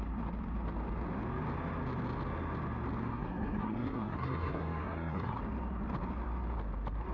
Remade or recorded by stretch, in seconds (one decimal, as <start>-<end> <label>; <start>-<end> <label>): 0.0-3.0 recorded; 3.0-5.4 remade; 5.4-7.1 recorded